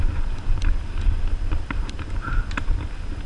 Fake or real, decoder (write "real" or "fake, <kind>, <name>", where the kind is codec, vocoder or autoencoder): real